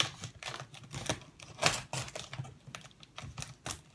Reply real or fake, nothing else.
real